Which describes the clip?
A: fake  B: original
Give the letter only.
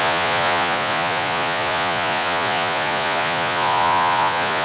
A